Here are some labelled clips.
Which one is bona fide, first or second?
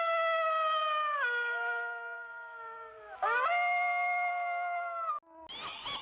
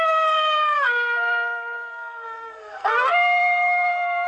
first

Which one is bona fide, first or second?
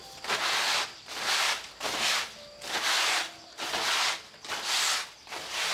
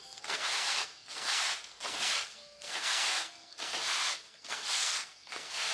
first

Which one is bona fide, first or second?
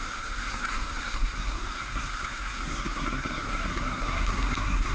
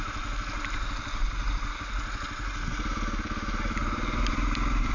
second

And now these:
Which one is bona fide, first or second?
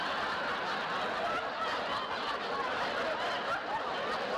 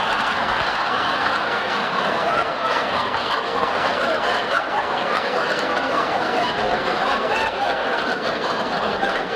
first